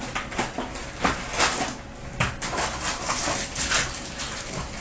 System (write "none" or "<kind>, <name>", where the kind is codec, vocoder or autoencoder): none